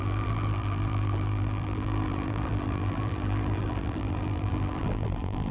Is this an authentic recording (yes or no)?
no